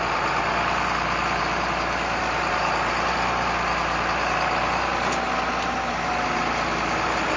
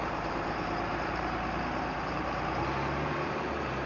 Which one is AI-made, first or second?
second